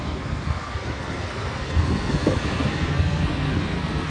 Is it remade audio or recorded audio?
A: remade